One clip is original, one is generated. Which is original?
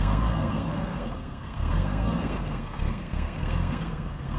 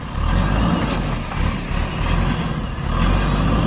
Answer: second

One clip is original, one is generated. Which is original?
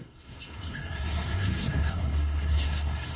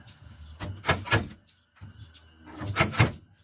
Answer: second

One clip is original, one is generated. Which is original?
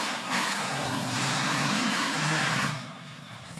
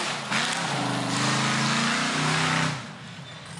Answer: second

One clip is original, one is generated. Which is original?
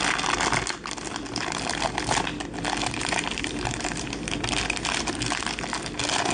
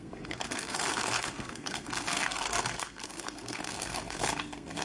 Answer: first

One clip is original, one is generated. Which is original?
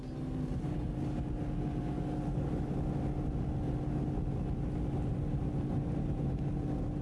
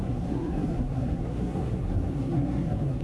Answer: first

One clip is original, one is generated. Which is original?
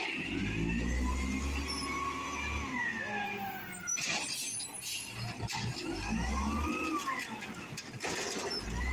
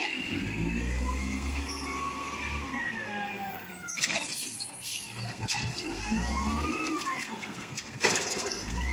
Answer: first